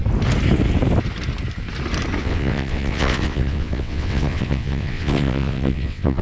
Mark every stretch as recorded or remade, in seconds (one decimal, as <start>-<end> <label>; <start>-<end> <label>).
0.0-2.2 recorded; 2.2-6.2 remade